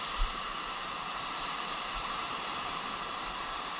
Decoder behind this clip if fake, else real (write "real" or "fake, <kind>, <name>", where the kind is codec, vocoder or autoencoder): fake, vocoder, BigVGAN v2